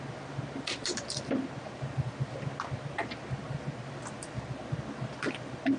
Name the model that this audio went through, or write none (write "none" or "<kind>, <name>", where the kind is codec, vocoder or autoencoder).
none